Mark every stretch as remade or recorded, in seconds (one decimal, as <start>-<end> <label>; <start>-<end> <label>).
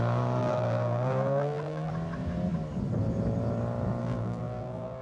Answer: 0.0-0.4 recorded; 0.4-1.9 remade; 1.9-4.0 recorded; 4.0-5.0 remade